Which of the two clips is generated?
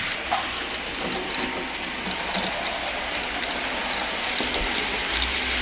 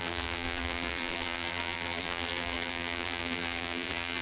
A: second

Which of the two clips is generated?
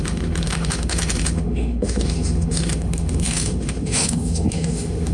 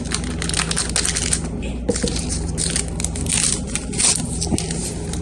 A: first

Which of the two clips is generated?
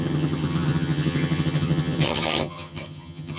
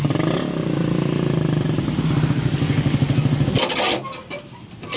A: first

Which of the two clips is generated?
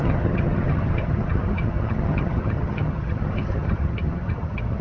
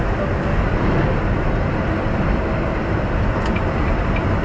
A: first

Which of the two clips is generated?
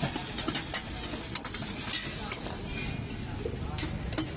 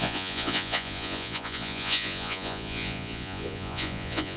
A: second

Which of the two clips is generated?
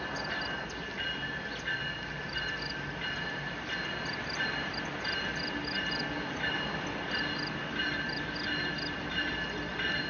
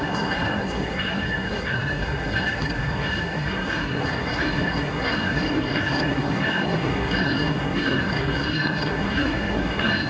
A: second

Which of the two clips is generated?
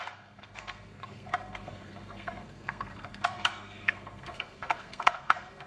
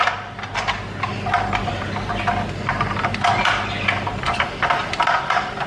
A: first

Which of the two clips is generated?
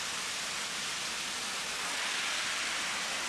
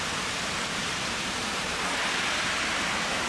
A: second